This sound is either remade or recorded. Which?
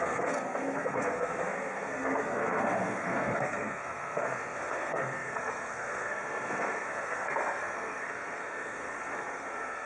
remade